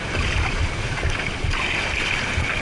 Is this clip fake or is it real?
real